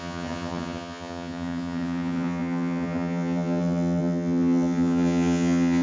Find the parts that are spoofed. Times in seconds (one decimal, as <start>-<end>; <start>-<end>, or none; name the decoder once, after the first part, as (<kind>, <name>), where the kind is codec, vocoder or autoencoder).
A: 0.0-5.8 (vocoder, HiFi-GAN)